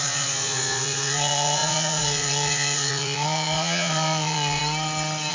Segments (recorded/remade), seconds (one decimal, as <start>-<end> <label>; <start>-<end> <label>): 0.0-4.6 remade; 4.6-5.3 recorded

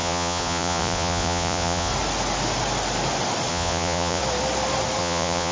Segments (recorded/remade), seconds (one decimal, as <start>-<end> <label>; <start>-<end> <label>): 0.0-1.9 remade; 1.9-3.5 recorded; 3.5-4.2 remade; 4.2-5.0 recorded; 5.0-5.5 remade

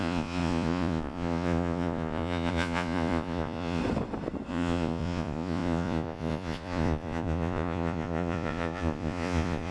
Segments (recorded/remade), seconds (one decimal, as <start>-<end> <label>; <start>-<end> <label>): 0.0-3.8 remade; 3.8-4.5 recorded; 4.5-9.7 remade

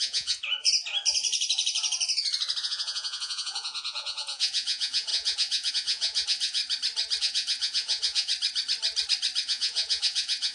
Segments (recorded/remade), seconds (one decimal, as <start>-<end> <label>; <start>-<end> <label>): 0.0-0.4 remade; 0.4-2.6 recorded; 2.6-6.6 remade; 6.6-7.2 recorded; 7.2-8.3 remade; 8.3-9.4 recorded; 9.4-10.5 remade

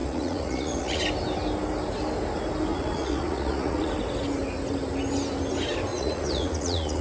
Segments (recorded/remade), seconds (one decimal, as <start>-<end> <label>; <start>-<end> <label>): 0.0-1.0 remade; 1.0-2.7 recorded; 2.7-3.9 remade; 3.9-5.9 recorded; 5.9-7.0 remade

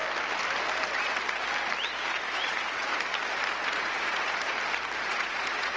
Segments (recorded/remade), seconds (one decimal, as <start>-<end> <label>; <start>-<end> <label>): 0.0-2.1 recorded; 2.1-2.9 remade; 2.9-3.7 recorded; 3.7-4.5 remade; 4.5-5.1 recorded; 5.1-5.8 remade

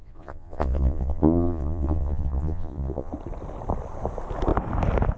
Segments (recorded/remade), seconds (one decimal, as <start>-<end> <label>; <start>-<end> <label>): 0.0-3.1 remade; 3.1-5.2 recorded